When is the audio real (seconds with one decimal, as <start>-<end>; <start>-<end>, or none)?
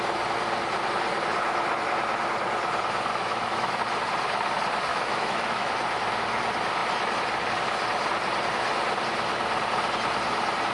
0.0-3.1; 3.8-4.9; 5.7-10.7